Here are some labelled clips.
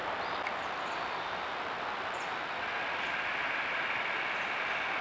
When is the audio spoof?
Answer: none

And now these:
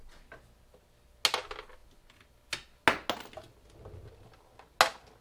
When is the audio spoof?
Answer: none

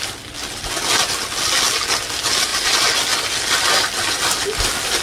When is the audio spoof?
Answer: none

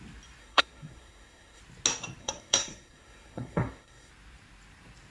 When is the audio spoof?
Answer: 0.4-1.6 (codec, SNAC); 2.2-4.1

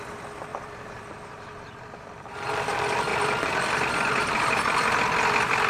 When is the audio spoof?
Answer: 0.5-2.6 (vocoder, BigVGAN v2); 3.1-5.0

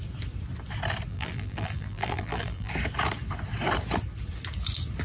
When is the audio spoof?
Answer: 1.1-2.7 (vocoder, BigVGAN v2)

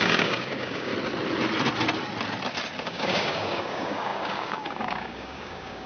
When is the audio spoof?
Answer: 0.0-0.9 (codec, DAC); 2.8-5.9

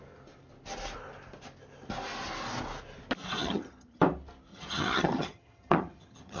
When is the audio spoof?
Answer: 3.4-4.0 (vocoder, HiFi-GAN); 4.5-6.4